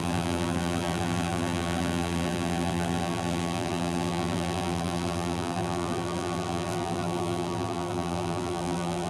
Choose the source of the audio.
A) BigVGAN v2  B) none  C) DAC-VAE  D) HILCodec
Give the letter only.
A